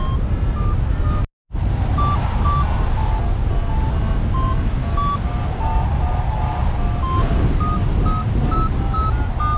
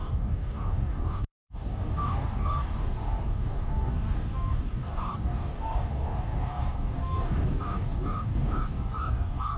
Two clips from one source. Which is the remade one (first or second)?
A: second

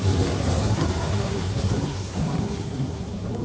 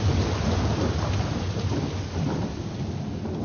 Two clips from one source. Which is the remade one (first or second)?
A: first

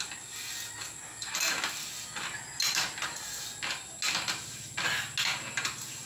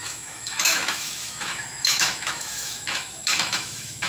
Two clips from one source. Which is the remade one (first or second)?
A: second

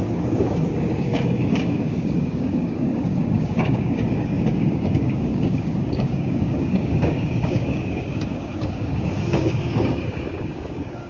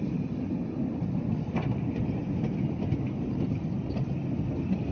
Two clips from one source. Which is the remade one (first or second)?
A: first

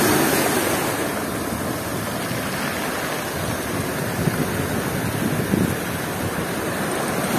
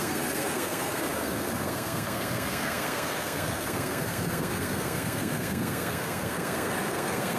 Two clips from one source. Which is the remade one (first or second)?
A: second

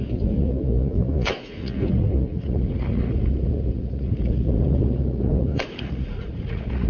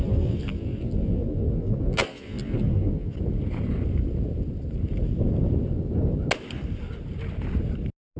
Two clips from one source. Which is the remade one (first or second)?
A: first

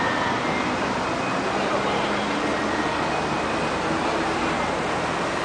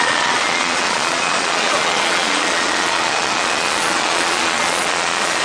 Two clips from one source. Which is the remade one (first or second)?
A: second